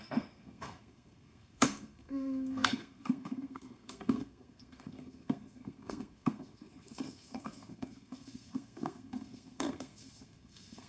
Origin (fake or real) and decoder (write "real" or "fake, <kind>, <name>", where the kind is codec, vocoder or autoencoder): fake, codec, SNAC